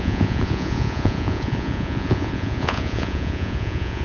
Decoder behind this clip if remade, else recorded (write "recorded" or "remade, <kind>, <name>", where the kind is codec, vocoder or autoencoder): remade, vocoder, Vocos